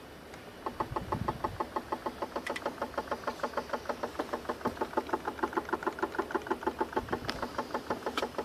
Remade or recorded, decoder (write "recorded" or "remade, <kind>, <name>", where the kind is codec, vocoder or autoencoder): recorded